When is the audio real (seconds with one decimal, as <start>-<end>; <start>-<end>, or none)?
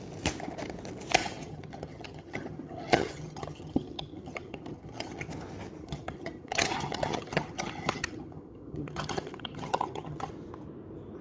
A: 0.0-1.2; 5.3-5.8; 10.3-11.2